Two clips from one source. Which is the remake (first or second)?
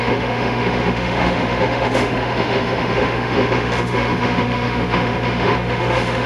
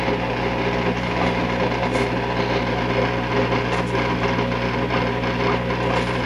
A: first